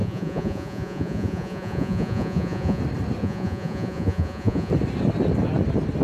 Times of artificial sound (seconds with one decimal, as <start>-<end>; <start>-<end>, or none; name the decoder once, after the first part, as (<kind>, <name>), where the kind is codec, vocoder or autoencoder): 0.0-2.8 (vocoder, Vocos); 3.2-4.7